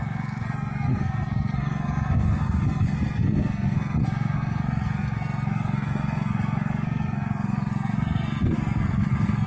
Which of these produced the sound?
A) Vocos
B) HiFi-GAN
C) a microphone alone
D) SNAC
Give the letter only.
D